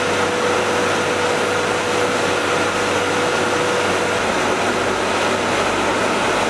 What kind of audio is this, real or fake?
real